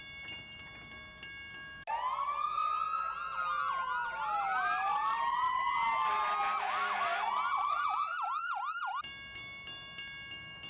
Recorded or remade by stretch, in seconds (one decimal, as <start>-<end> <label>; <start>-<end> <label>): 0.0-8.1 recorded; 8.1-8.8 remade; 8.8-10.7 recorded